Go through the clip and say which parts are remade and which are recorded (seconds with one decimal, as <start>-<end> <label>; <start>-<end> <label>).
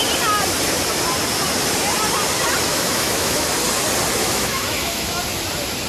0.0-2.7 recorded; 2.7-3.5 remade; 3.5-4.2 recorded; 4.2-5.2 remade; 5.2-5.9 recorded